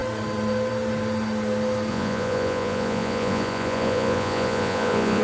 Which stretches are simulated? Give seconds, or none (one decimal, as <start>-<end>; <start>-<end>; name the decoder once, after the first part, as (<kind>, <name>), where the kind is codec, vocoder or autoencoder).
1.9-5.2 (vocoder, Vocos)